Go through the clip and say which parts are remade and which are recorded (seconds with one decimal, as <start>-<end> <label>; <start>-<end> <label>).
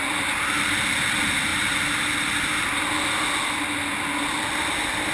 0.0-5.1 recorded